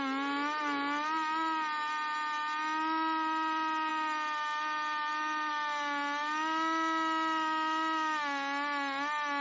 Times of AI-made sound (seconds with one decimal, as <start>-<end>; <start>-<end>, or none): none

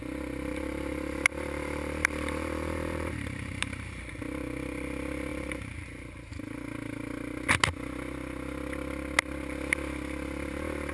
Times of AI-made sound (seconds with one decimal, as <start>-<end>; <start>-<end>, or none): 0.5-4.0; 5.3-6.3

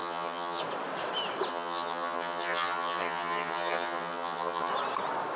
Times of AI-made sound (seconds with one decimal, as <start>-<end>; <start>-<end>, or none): 0.0-0.6; 1.5-4.7

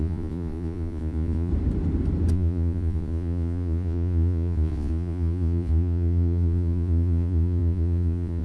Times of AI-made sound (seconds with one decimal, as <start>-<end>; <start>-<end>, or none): 0.0-1.5; 2.3-8.4

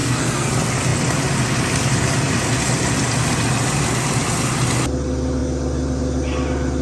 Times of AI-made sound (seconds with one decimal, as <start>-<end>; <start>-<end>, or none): 0.0-0.5

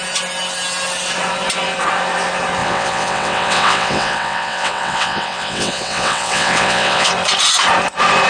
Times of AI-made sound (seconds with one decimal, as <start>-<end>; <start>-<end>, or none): 2.6-7.1